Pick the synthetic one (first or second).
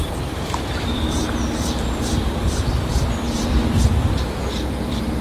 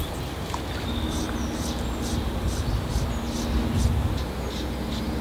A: first